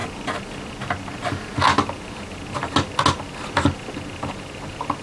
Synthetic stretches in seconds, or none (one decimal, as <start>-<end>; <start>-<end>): none